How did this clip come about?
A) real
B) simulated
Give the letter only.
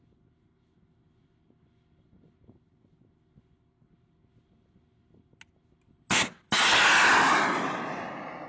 A